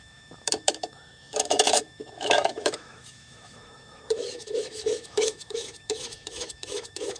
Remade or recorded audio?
remade